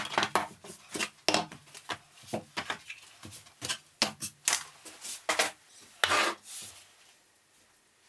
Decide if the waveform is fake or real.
real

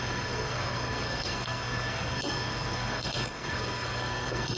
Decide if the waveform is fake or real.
fake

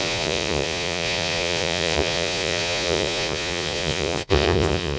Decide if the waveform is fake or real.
fake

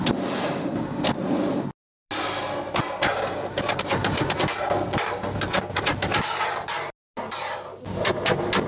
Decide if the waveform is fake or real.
real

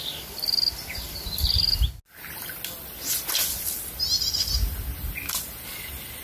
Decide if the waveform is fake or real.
real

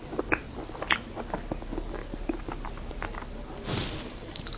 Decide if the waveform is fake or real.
real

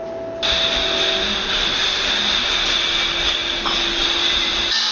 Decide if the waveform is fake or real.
real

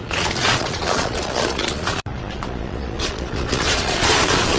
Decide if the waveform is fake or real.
fake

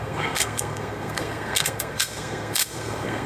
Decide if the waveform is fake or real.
fake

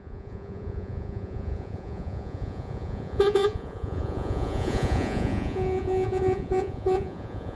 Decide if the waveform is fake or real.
fake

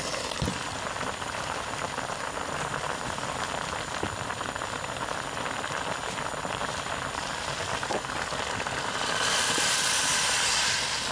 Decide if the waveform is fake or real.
fake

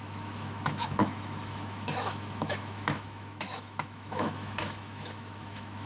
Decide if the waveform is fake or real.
fake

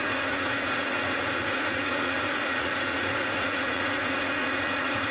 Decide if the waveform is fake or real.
fake